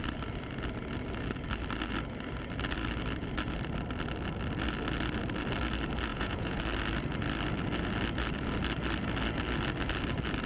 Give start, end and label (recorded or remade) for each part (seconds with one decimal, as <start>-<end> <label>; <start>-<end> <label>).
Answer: 0.0-6.1 recorded; 6.1-6.6 remade; 6.6-10.5 recorded